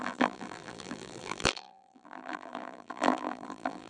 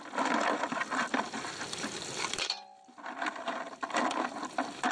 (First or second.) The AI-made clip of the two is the first